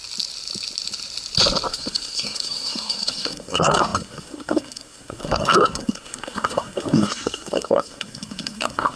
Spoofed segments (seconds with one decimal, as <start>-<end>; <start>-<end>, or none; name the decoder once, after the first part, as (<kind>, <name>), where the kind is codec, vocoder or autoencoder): 1.7-9.0 (codec, SNAC)